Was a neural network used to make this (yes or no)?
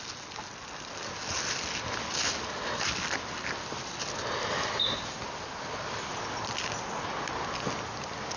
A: no